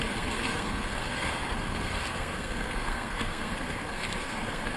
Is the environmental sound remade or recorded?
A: remade